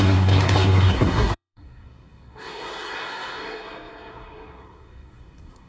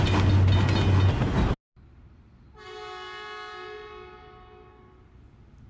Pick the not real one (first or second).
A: first